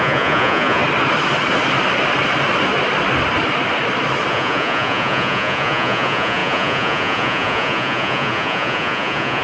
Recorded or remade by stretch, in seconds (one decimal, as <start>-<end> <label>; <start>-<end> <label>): 0.0-0.8 remade; 0.8-4.3 recorded; 4.3-9.4 remade